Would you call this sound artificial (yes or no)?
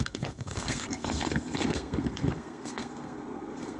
yes